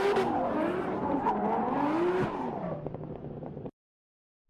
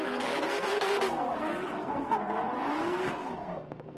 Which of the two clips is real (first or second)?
first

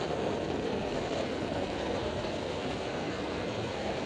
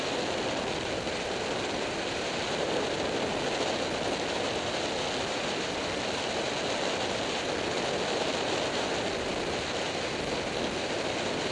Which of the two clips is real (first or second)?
second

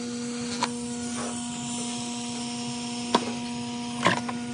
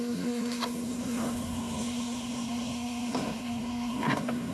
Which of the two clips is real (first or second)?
first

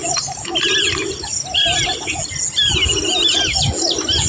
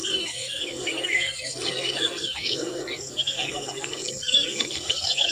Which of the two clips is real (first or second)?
first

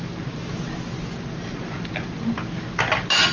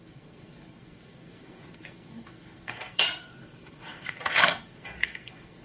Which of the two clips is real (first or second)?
first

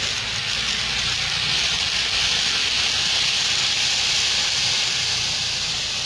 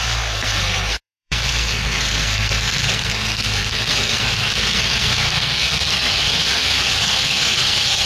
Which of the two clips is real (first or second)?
first